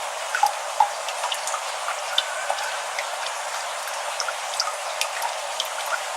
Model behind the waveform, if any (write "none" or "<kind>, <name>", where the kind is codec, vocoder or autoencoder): none